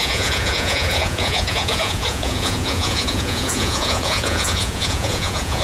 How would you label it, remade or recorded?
remade